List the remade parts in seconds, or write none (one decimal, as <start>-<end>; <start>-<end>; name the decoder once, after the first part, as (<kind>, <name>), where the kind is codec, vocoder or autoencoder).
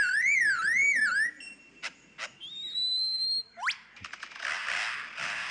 none